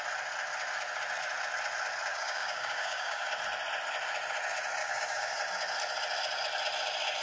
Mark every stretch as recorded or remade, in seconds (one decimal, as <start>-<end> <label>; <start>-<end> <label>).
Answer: 0.0-2.1 recorded; 2.1-3.3 remade; 3.3-4.8 recorded; 4.8-5.4 remade; 5.4-7.2 recorded